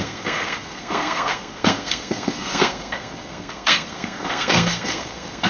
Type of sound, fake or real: fake